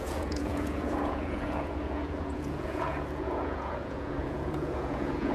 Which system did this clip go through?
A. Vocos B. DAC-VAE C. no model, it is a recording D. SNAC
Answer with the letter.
A